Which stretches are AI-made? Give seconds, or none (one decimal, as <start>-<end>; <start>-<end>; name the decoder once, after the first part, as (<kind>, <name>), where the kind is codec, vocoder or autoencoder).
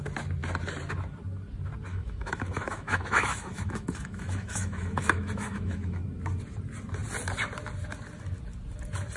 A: 1.9-6.0 (autoencoder, DAC-VAE)